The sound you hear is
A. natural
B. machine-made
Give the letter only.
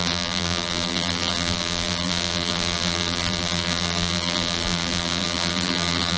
B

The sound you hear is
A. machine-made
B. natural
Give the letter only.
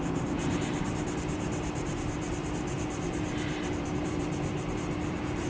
A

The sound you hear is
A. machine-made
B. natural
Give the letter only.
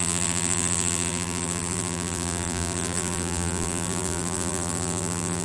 A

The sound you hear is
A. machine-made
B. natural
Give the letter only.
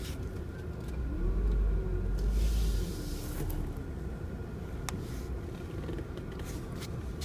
B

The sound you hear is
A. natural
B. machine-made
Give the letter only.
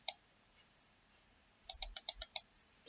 B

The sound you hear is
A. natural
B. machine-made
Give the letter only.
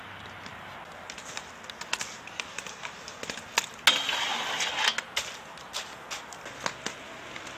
A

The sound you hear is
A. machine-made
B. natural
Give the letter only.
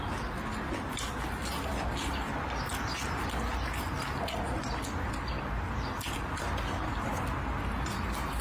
B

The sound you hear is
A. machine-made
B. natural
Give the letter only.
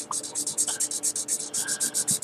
B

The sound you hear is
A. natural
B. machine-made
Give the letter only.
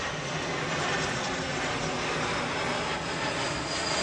A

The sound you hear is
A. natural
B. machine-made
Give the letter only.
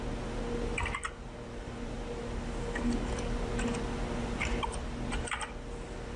A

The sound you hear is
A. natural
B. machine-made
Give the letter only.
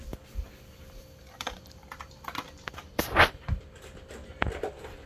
B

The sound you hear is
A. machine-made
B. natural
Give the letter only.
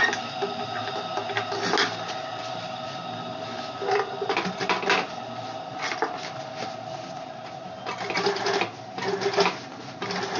B